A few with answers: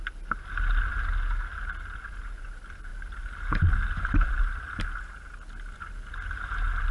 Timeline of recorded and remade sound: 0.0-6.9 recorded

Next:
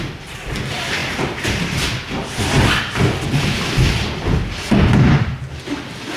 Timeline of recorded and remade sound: 0.0-6.2 recorded

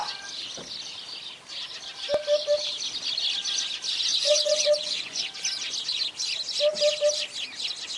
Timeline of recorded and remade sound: 0.0-4.1 recorded; 4.1-5.2 remade; 5.2-8.0 recorded